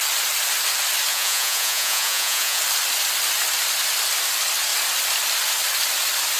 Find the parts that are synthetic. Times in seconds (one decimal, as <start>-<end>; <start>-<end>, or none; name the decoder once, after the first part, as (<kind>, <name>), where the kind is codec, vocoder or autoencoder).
1.1-2.6 (vocoder, Vocos)